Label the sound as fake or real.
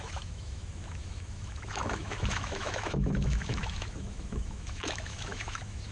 fake